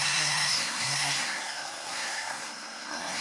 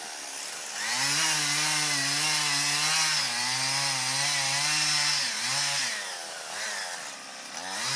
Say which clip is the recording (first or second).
second